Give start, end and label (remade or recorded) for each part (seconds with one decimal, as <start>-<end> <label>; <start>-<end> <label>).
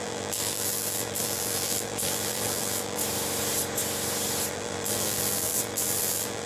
0.0-3.0 remade; 3.0-4.5 recorded; 4.5-6.5 remade